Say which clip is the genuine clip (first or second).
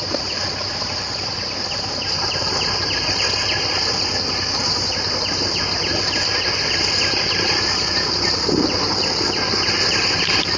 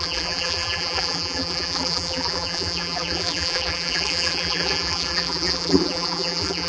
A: first